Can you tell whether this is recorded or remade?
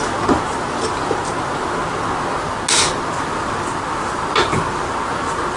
recorded